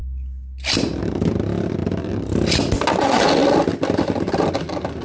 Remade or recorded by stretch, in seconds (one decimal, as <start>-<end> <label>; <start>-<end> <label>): 0.0-5.0 recorded